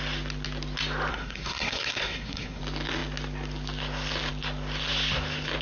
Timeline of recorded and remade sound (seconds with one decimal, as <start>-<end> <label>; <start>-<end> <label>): 0.0-1.1 recorded; 1.1-2.6 remade; 2.6-5.6 recorded